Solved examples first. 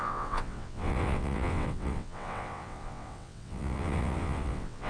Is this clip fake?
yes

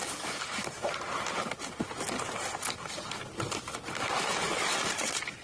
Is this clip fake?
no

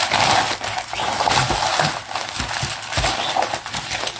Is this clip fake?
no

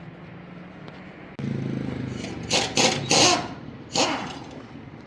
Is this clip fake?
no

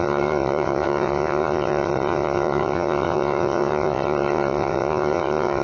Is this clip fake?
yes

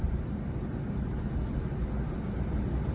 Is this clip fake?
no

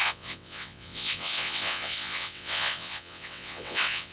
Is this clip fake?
yes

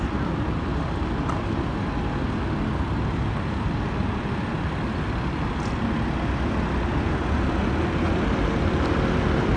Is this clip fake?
no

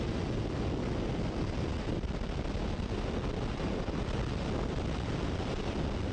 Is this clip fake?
no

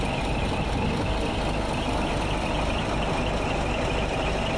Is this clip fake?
no